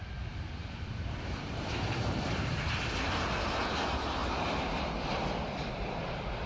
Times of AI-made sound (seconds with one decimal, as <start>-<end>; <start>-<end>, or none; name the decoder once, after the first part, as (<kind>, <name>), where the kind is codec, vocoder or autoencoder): 0.6-3.1 (vocoder, BigVGAN v2); 4.2-4.9